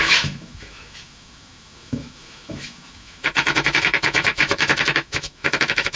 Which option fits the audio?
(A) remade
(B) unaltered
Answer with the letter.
A